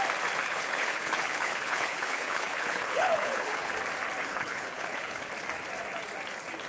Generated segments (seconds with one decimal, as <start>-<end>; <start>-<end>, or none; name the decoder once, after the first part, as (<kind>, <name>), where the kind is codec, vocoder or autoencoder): 0.4-3.7 (codec, HILCodec); 4.2-5.3